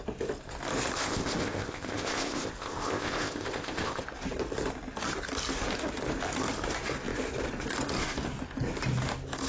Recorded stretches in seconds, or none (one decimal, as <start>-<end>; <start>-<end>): 0.0-1.0; 4.0-9.5